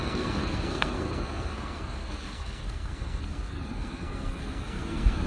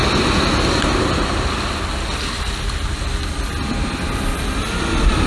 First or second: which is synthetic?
first